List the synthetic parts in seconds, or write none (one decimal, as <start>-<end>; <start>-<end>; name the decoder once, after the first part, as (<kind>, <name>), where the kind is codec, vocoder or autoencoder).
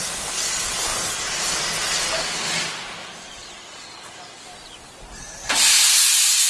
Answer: none